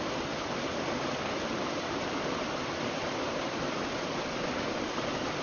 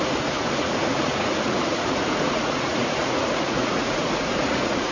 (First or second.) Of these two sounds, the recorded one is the first